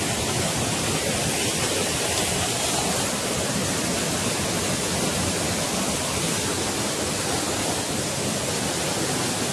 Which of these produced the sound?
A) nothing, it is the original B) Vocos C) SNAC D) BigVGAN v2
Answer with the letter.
A